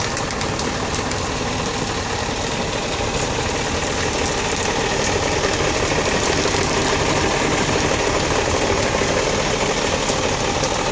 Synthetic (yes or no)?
no